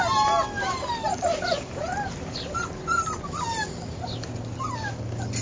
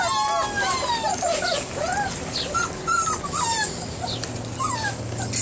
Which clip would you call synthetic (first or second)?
first